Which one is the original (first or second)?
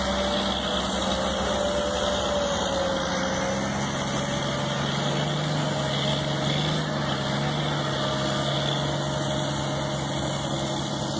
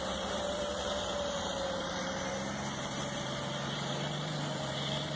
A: first